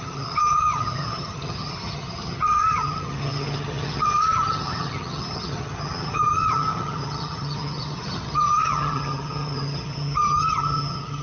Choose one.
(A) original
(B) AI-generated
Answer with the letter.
B